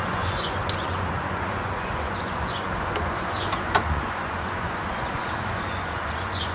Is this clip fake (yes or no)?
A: yes